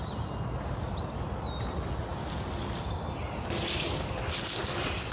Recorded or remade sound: recorded